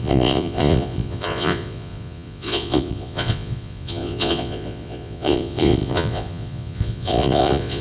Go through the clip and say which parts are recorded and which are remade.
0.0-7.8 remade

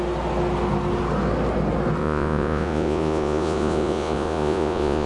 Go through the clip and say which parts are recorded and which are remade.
0.0-2.0 recorded; 2.0-5.1 remade

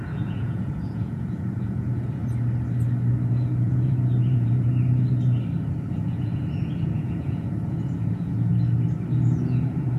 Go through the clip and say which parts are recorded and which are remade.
0.0-2.2 remade; 2.2-3.3 recorded; 3.3-4.7 remade; 4.7-5.9 recorded; 5.9-8.5 remade; 8.5-9.1 recorded; 9.1-10.0 remade

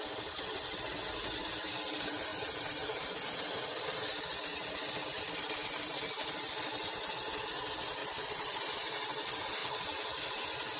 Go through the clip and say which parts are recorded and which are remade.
0.0-8.0 recorded; 8.0-8.6 remade; 8.6-10.8 recorded

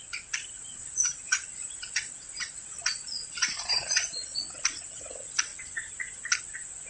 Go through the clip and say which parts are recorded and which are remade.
0.0-0.7 recorded; 0.7-4.8 remade; 4.8-6.9 recorded

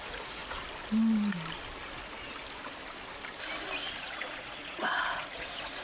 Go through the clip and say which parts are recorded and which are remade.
0.0-0.4 remade; 0.4-3.9 recorded; 3.9-5.8 remade